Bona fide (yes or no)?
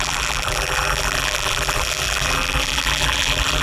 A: no